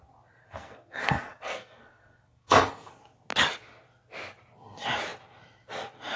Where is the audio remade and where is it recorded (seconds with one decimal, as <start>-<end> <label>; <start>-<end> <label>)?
0.0-0.4 recorded; 0.4-2.9 remade; 2.9-6.2 recorded